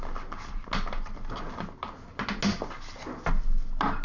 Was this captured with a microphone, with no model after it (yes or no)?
yes